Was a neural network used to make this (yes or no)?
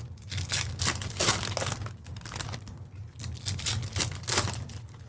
no